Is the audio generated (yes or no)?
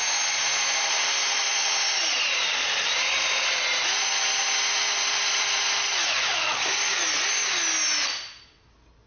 no